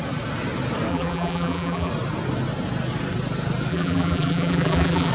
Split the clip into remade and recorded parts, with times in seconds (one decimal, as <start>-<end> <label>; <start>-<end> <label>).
0.0-0.9 recorded; 0.9-1.9 remade; 1.9-3.7 recorded; 3.7-5.1 remade